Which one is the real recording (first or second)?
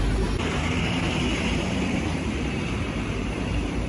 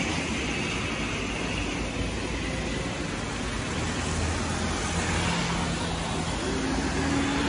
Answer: second